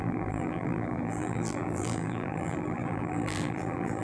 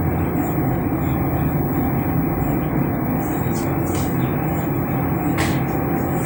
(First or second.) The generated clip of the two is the first